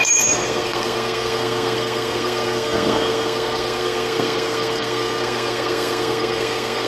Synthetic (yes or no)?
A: yes